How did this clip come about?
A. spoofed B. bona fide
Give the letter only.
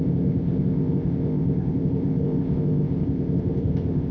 A